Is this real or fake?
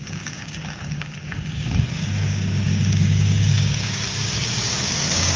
fake